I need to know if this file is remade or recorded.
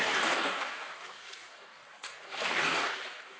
remade